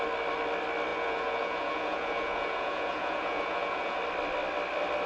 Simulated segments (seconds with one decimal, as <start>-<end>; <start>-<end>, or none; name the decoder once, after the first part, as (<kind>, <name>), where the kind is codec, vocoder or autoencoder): 0.9-4.0 (vocoder, Vocos)